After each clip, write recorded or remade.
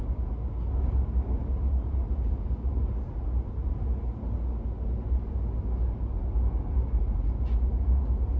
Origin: recorded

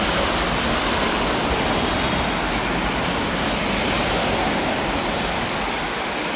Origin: recorded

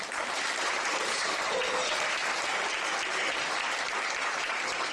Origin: remade